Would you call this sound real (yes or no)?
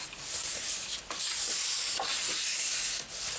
yes